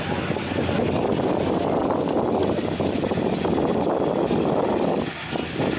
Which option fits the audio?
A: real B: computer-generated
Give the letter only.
A